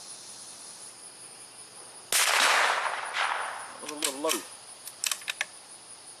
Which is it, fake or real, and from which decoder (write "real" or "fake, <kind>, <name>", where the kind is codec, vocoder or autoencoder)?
real